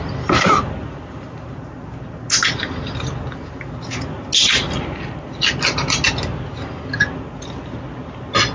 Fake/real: real